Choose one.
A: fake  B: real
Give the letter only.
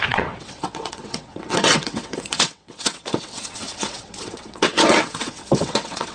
A